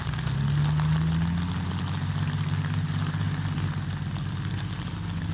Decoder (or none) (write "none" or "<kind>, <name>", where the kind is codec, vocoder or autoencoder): none